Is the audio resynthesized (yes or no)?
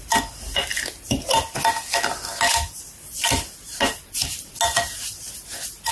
no